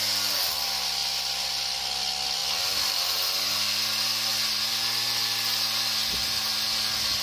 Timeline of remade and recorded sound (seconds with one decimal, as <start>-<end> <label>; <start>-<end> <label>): 0.0-7.2 recorded